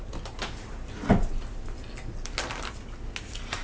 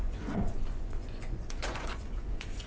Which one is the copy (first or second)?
second